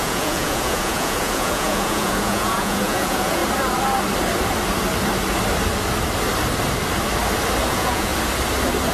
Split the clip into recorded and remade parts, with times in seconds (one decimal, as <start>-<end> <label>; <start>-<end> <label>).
0.0-3.4 remade; 3.4-7.7 recorded; 7.7-8.1 remade; 8.1-8.9 recorded

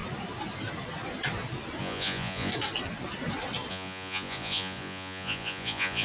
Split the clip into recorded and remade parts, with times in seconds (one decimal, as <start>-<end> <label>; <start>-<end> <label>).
0.0-1.8 recorded; 1.8-2.5 remade; 2.5-3.7 recorded; 3.7-6.0 remade

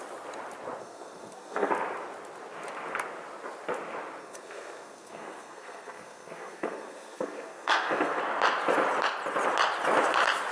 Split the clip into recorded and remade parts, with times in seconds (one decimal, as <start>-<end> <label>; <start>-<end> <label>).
0.0-0.8 recorded; 0.8-1.7 remade; 1.7-4.2 recorded; 4.2-8.2 remade; 8.2-10.5 recorded

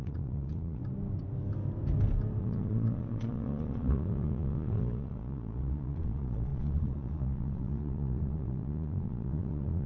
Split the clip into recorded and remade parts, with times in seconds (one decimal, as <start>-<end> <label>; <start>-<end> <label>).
0.0-0.8 remade; 0.8-2.4 recorded; 2.4-9.9 remade

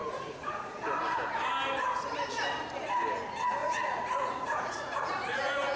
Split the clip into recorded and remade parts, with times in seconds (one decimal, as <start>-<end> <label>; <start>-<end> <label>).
0.0-0.7 remade; 0.7-3.6 recorded; 3.6-5.8 remade